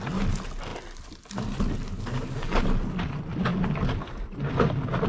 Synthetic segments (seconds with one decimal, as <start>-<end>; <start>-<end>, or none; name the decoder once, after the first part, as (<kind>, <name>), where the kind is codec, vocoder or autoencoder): none